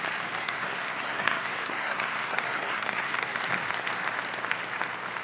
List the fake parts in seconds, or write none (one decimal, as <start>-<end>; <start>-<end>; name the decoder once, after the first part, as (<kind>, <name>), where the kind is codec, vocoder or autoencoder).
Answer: 0.4-3.4 (codec, SNAC)

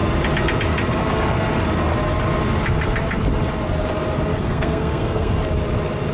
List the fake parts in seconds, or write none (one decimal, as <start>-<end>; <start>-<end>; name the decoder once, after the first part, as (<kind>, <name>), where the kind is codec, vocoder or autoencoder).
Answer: 4.3-5.4 (codec, SNAC)

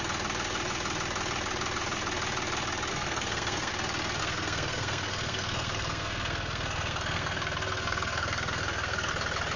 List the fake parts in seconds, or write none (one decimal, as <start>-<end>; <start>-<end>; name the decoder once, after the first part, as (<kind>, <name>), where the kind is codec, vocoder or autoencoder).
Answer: 2.9-3.7 (codec, SNAC); 4.2-9.1

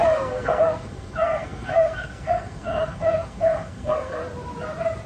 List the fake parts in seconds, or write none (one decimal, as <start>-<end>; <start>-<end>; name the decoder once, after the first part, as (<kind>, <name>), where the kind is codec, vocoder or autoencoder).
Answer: 0.0-4.2 (codec, SNAC)

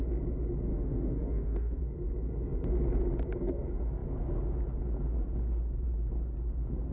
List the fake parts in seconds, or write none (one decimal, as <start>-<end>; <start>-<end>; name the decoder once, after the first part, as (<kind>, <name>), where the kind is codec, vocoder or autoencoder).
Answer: 0.7-1.8 (autoencoder, DAC-VAE)

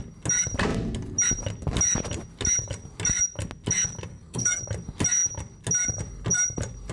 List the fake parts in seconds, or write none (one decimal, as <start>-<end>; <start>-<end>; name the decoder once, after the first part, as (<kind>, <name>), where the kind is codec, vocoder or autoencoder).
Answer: 4.1-4.6 (codec, SNAC)

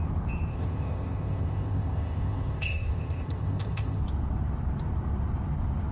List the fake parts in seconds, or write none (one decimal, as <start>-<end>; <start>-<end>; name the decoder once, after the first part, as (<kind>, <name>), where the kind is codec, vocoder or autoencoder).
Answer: 0.5-4.0 (codec, ZipCodec)

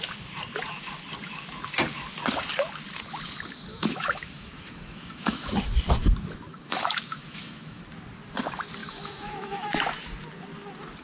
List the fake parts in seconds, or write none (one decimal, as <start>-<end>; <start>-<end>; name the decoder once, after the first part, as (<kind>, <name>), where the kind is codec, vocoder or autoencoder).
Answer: 3.7-5.5 (autoencoder, DAC-VAE); 6.5-7.8; 8.8-9.8